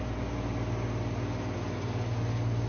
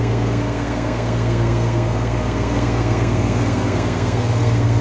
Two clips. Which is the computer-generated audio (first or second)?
second